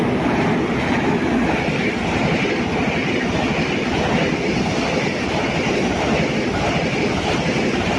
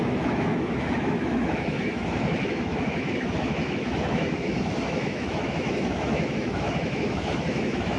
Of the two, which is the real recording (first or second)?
first